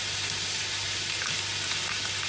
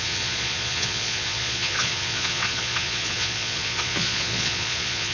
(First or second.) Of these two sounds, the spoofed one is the second